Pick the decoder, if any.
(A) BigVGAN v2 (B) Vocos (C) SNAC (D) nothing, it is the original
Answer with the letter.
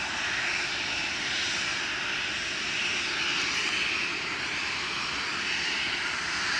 D